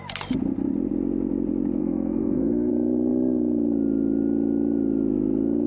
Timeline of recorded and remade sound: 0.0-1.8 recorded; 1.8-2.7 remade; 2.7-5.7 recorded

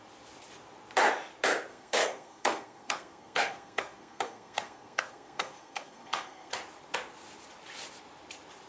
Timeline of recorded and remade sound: 0.0-1.7 recorded; 1.7-6.5 remade; 6.5-8.7 recorded